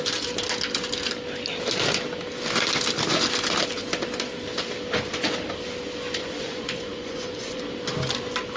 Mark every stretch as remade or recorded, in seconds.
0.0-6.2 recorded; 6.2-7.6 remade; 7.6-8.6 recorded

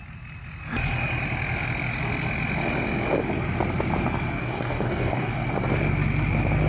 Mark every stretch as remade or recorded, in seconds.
0.0-4.4 recorded; 4.4-5.3 remade; 5.3-6.7 recorded

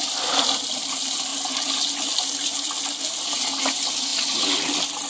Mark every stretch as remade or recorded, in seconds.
0.0-5.1 recorded